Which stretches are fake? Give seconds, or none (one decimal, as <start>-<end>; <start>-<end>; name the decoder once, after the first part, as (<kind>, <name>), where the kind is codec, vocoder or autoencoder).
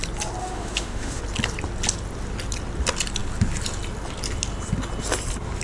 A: 0.4-1.2 (autoencoder, DAC-VAE)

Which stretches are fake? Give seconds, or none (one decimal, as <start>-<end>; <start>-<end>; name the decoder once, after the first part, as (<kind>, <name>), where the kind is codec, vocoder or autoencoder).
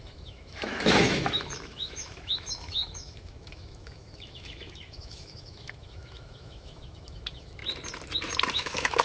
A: 0.0-7.6 (autoencoder, DAC-VAE); 8.5-9.0